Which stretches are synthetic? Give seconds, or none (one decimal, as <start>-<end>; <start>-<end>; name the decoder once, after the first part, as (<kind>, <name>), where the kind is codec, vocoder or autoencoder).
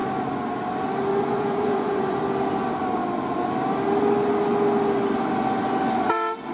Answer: 1.1-2.2 (vocoder, Vocos)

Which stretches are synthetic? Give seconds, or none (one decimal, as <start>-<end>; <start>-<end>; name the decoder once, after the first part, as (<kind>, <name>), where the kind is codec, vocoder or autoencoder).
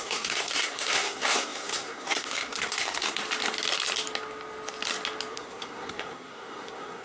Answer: 0.0-3.2 (codec, SNAC); 5.3-7.0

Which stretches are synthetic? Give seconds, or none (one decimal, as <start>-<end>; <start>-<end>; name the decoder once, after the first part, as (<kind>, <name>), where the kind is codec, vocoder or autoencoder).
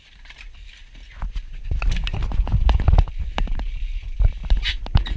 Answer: none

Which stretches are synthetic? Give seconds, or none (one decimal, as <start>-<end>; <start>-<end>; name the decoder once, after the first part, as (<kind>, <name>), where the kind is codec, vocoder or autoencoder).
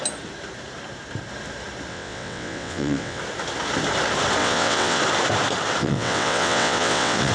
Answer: 1.9-3.2 (vocoder, WaveNeXt); 4.4-5.0; 5.8-7.3